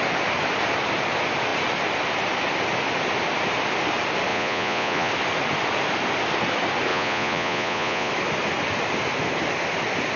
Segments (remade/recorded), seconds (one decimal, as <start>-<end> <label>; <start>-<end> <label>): 0.0-4.3 recorded; 4.3-5.1 remade; 5.1-6.9 recorded; 6.9-8.1 remade; 8.1-10.2 recorded